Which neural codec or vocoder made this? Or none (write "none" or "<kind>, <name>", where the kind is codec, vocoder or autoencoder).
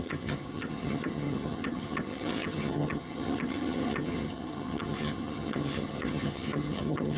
vocoder, HiFi-GAN